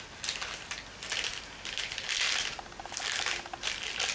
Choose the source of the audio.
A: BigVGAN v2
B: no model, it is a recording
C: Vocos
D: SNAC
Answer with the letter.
B